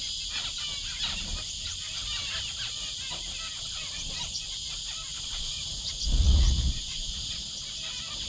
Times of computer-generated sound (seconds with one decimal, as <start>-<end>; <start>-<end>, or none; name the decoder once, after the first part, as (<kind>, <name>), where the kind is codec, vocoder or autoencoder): 5.1-7.3 (vocoder, Vocos)

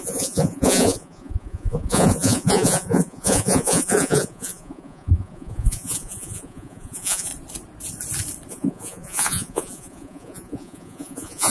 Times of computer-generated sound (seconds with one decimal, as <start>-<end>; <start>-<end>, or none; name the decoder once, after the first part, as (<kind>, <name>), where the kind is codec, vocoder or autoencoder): 0.0-7.3 (vocoder, Vocos); 8.5-11.5

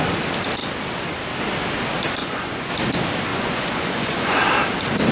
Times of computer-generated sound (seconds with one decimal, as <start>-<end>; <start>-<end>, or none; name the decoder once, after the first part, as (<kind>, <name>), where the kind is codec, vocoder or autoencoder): 2.2-2.7 (vocoder, Vocos); 3.3-4.4

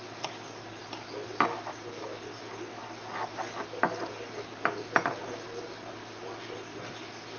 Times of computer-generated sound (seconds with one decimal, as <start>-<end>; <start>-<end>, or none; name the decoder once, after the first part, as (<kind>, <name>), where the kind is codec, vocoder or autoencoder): none